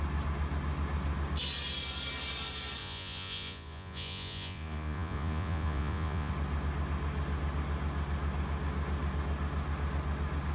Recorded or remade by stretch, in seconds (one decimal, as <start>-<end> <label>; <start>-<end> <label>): 0.0-2.8 recorded; 2.8-6.3 remade; 6.3-10.5 recorded

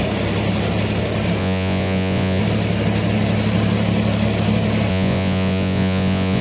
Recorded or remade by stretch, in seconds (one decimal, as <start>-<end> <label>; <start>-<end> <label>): 0.0-1.4 recorded; 1.4-2.4 remade; 2.4-4.9 recorded; 4.9-6.4 remade

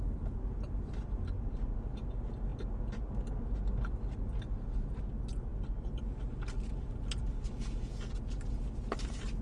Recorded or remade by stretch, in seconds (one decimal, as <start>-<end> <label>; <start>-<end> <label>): 0.0-9.4 recorded

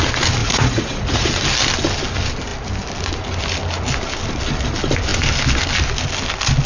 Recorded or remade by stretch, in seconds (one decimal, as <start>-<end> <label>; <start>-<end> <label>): 0.0-0.4 recorded; 0.4-1.3 remade; 1.3-6.7 recorded

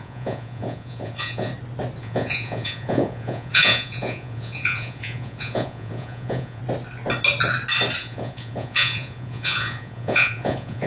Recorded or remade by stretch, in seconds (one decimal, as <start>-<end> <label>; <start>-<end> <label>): 0.0-1.5 remade; 1.5-2.0 recorded; 2.0-6.6 remade; 6.6-8.0 recorded; 8.0-10.9 remade